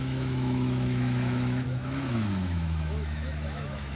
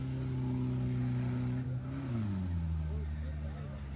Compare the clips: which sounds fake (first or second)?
first